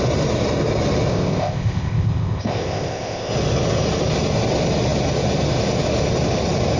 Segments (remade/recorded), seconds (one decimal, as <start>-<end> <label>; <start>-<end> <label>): 0.0-1.1 recorded; 1.1-3.3 remade; 3.3-6.8 recorded